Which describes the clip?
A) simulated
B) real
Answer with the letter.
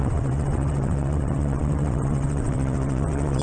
A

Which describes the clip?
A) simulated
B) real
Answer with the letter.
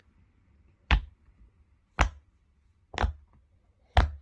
B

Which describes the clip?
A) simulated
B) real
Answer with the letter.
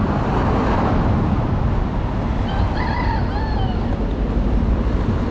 B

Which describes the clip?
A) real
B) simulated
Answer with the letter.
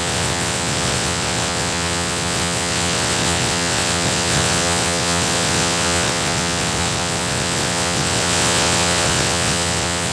B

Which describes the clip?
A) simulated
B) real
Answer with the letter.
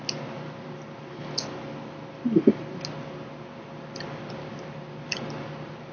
B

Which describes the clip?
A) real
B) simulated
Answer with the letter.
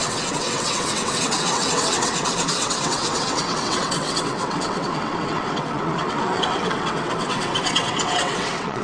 B